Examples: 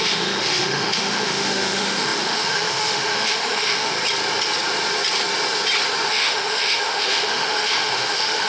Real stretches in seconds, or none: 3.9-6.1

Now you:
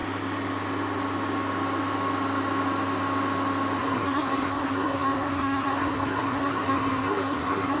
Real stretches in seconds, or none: 0.0-3.8

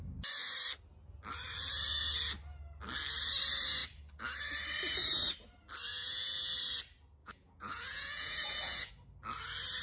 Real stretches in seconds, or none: 0.0-5.9; 6.5-7.2; 8.9-9.8